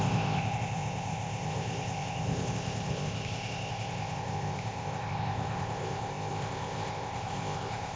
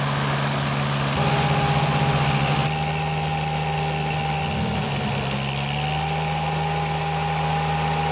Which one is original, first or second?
second